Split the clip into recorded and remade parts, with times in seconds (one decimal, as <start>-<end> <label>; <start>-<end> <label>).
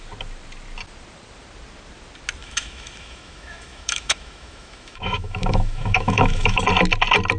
0.0-2.4 recorded; 2.4-6.6 remade; 6.6-7.4 recorded